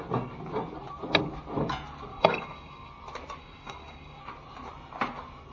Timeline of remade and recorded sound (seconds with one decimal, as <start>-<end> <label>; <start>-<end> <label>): 0.0-2.1 recorded; 2.1-2.9 remade; 2.9-3.4 recorded; 3.4-4.2 remade; 4.2-5.5 recorded